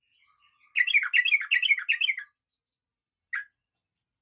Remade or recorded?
recorded